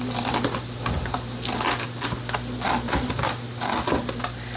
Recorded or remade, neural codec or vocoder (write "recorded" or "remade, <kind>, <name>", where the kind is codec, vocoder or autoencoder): recorded